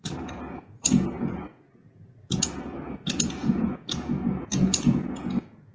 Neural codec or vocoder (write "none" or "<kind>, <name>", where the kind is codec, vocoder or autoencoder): vocoder, Vocos